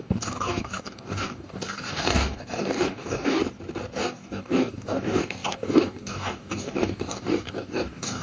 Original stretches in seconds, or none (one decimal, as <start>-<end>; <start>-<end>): 3.4-4.0